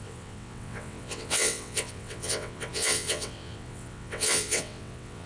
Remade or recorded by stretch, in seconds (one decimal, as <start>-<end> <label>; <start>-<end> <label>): 0.0-5.3 remade